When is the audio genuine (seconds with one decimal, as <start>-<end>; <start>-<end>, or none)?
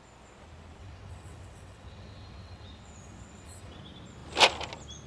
0.0-0.8; 3.8-5.1